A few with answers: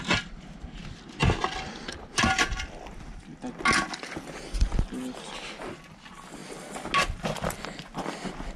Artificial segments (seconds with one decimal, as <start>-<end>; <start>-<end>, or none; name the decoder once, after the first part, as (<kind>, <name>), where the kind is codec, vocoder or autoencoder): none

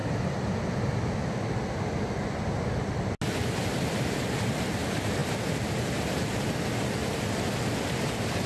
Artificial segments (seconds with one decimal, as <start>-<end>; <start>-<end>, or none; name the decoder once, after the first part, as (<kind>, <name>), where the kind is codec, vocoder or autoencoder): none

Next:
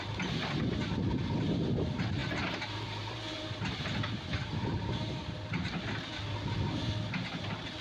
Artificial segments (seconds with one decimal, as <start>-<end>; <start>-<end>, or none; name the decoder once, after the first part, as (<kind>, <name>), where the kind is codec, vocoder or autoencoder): 2.2-3.8 (vocoder, BigVGAN v2); 4.3-5.8

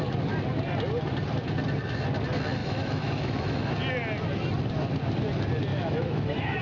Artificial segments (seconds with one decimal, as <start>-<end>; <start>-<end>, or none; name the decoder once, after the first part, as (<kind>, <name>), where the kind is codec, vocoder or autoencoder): 2.6-3.7 (autoencoder, DAC-VAE); 5.7-6.6

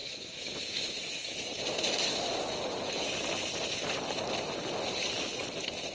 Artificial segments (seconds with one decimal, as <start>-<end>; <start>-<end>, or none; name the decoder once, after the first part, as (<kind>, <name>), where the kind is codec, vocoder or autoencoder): 0.0-1.5 (autoencoder, DAC-VAE)

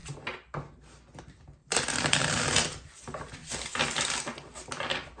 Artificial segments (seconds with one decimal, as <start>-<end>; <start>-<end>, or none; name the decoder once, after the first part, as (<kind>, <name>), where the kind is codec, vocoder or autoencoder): 1.6-2.4 (vocoder, BigVGAN v2)

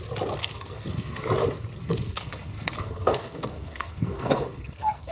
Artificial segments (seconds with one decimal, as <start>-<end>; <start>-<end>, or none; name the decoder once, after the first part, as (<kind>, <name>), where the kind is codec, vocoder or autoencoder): 0.4-1.2 (codec, SNAC); 1.8-5.1